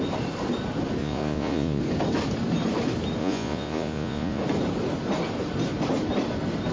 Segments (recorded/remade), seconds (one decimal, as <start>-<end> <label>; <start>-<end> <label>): 0.0-1.0 recorded; 1.0-1.8 remade; 1.8-3.2 recorded; 3.2-4.4 remade; 4.4-6.7 recorded